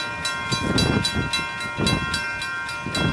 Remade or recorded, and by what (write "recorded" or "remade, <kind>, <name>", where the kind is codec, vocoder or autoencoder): recorded